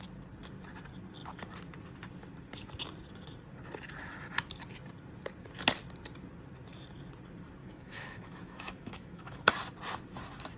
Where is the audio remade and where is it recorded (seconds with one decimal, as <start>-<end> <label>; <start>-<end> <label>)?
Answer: 0.0-7.6 recorded; 7.6-9.5 remade; 9.5-10.6 recorded